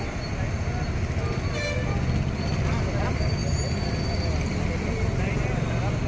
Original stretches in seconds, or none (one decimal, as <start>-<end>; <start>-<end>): 0.0-6.1